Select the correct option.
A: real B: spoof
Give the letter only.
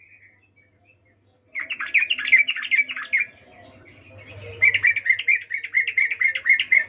A